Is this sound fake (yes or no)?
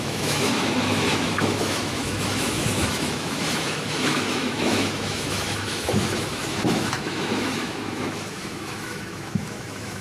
yes